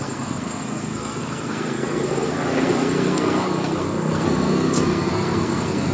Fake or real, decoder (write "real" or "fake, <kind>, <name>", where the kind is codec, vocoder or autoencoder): fake, codec, SNAC